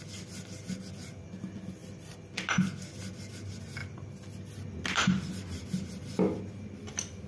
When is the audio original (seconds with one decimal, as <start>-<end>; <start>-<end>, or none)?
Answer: 0.0-1.8; 2.6-3.8; 5.3-7.3

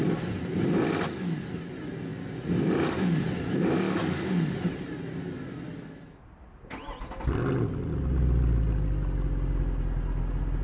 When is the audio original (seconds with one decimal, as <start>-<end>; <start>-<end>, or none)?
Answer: 0.0-10.6